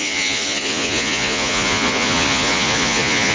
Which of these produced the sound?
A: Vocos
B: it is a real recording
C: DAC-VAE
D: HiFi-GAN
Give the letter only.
A